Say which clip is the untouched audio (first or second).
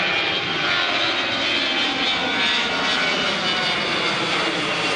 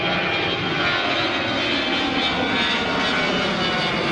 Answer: second